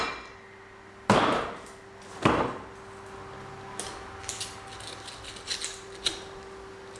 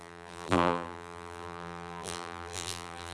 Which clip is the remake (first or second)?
second